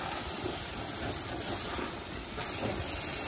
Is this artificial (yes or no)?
no